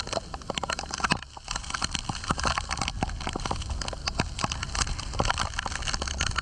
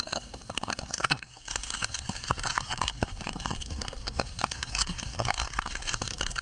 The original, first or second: first